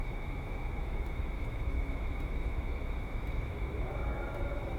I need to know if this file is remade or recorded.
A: remade